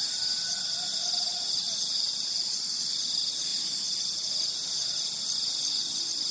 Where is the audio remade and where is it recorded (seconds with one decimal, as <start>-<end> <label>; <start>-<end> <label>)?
0.0-1.3 recorded; 1.3-3.1 remade; 3.1-6.3 recorded